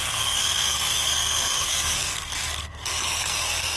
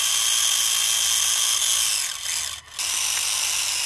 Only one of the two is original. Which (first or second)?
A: second